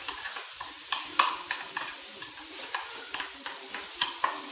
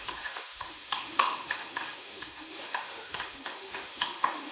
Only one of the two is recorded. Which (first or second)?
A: first